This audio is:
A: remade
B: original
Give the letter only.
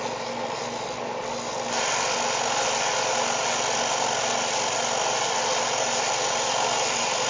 B